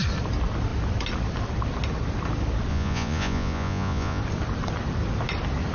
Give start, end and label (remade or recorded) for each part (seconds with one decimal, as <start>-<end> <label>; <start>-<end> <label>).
0.0-2.7 recorded; 2.7-4.2 remade; 4.2-5.7 recorded